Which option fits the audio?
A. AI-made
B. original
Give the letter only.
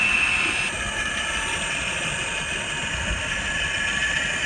B